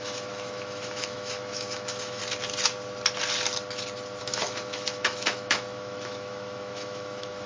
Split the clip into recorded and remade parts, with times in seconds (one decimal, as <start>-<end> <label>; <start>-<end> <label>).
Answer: 0.0-2.2 remade; 2.2-4.2 recorded; 4.2-7.5 remade